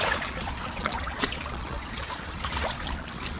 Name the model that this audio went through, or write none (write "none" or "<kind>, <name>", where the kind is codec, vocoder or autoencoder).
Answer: vocoder, Vocos